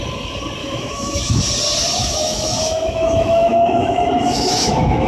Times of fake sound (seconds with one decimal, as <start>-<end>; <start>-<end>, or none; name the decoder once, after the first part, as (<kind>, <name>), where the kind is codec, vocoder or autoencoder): 0.6-1.4 (autoencoder, DAC-VAE); 2.0-5.1